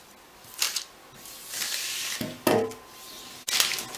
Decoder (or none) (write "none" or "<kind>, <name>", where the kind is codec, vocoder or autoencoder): none